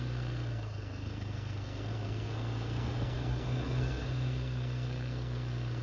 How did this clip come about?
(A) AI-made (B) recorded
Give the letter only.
A